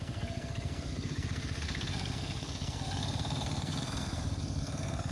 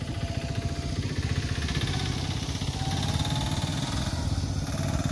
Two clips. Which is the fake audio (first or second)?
first